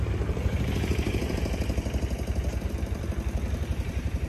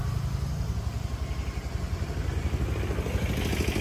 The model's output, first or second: first